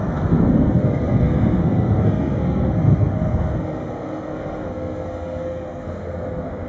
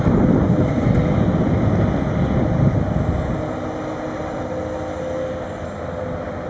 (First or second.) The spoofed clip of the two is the first